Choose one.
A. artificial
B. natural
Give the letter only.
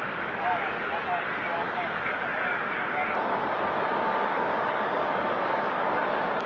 A